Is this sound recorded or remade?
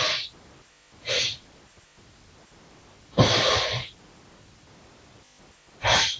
recorded